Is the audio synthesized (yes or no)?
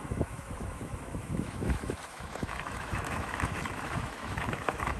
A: yes